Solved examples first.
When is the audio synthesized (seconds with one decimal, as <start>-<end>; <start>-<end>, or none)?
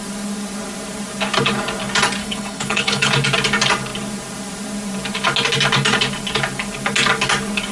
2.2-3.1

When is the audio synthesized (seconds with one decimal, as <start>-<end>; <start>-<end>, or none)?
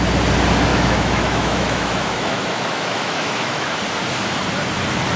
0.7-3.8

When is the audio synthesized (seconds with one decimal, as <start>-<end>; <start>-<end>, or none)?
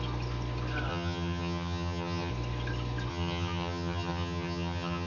0.9-2.3; 3.1-5.1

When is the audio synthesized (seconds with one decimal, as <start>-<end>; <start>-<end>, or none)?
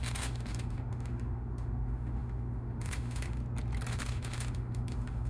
0.0-3.4; 3.9-5.3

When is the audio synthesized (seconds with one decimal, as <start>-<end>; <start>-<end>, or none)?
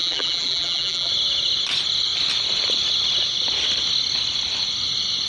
0.0-1.1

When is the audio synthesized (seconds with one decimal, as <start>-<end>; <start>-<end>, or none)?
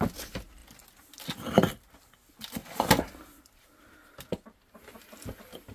none